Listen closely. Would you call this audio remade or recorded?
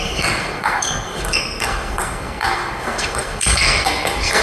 remade